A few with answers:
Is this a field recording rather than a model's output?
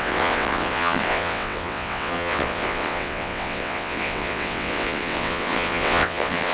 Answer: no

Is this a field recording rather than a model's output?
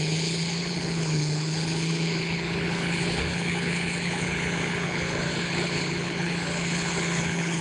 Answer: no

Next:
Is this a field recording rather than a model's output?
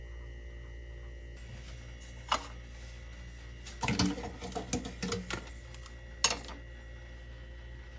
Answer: yes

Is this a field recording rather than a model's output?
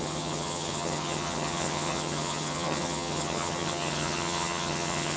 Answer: no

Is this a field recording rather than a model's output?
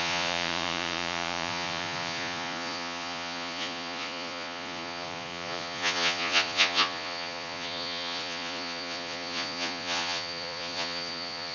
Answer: no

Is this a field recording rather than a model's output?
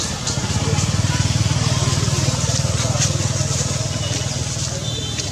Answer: yes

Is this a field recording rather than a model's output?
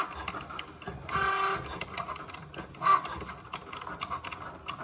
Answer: yes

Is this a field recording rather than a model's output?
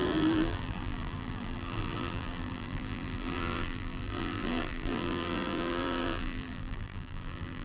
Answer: no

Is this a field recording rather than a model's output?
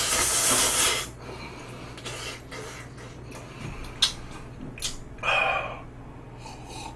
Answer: yes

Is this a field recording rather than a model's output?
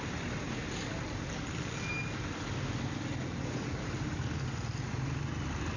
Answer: yes